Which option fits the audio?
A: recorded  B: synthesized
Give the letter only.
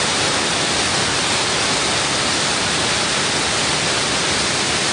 A